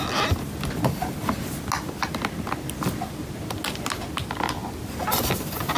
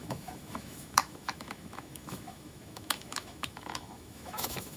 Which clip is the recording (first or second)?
first